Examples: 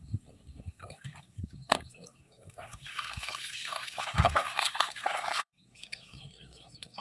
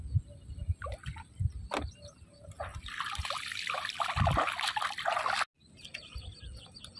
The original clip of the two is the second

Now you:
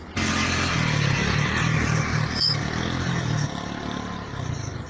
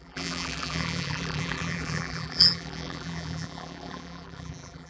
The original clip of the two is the first